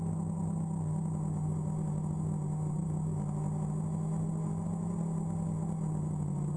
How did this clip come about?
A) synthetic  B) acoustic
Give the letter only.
B